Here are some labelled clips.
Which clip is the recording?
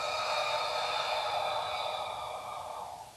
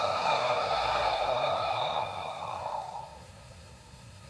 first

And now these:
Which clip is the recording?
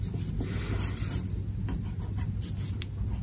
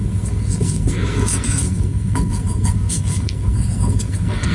first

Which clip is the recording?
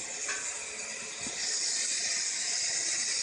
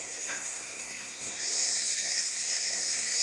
first